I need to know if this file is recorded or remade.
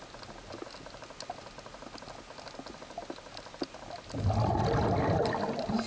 recorded